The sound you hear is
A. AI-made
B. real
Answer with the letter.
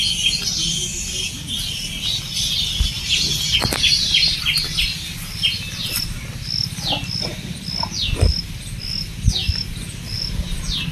B